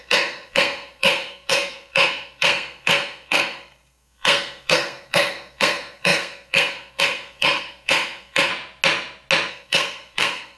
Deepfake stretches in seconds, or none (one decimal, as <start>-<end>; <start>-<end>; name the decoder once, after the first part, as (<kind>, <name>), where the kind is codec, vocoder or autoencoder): 0.0-8.5 (codec, SNAC); 9.5-10.6